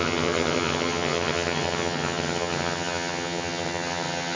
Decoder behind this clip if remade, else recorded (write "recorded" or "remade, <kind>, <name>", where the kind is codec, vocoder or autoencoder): remade, vocoder, HiFi-GAN